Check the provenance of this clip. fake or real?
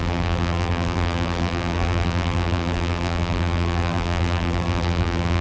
fake